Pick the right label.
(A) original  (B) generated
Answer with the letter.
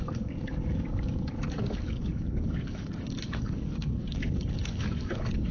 B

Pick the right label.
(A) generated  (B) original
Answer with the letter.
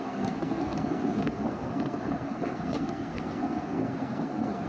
A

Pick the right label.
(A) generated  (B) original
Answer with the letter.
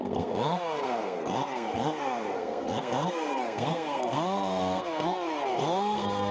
A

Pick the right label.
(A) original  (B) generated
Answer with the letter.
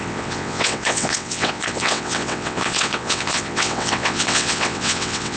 B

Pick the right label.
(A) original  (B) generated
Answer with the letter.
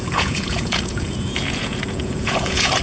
B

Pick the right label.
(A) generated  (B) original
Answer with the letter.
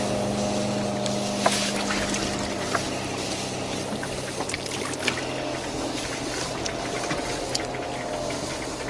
B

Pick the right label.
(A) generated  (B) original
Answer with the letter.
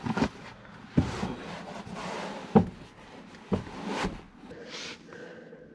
B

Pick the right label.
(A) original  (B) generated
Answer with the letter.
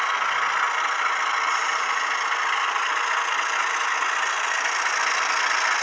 A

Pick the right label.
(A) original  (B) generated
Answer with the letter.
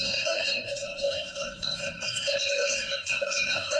B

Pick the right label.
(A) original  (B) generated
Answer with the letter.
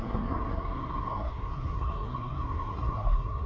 B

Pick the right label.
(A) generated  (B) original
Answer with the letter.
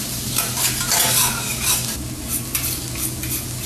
B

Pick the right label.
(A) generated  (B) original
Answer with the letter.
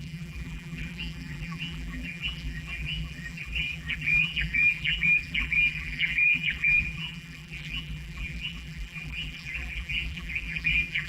A